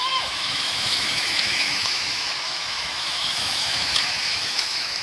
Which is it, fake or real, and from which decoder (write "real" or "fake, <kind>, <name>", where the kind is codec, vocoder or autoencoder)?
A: fake, autoencoder, DAC-VAE